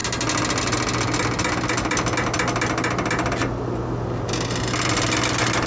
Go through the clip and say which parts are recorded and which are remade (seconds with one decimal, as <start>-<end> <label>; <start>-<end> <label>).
0.0-5.7 recorded